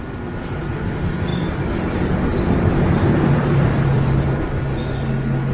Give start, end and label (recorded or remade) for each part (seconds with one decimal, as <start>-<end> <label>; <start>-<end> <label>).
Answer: 0.0-1.3 recorded; 1.3-4.6 remade; 4.6-5.5 recorded